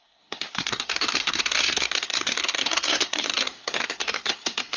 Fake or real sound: fake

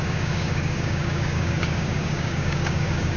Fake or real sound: fake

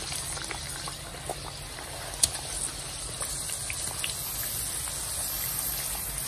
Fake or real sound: real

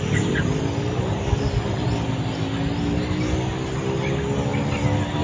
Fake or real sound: real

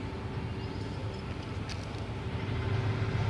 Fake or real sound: real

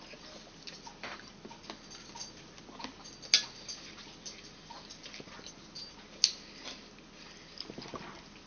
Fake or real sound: real